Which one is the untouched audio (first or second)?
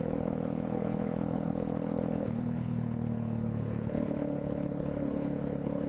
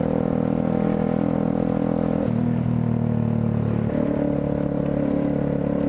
second